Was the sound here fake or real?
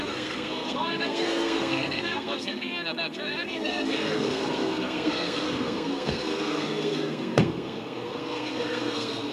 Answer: fake